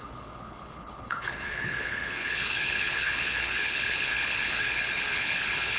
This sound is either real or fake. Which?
fake